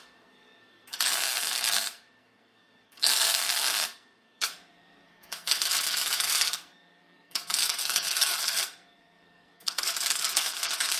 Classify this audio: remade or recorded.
remade